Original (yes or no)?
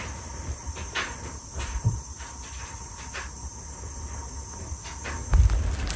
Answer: yes